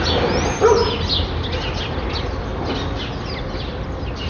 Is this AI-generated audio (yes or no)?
no